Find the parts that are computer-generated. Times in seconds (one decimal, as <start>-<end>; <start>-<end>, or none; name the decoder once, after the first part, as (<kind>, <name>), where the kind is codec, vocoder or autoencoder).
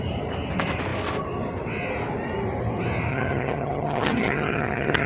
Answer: 3.1-5.1 (vocoder, HiFi-GAN)